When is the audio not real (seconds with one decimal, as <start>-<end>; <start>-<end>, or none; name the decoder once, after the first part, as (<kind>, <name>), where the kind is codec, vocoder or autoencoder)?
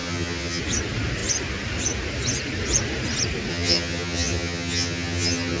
0.0-0.6 (vocoder, HiFi-GAN); 3.5-5.6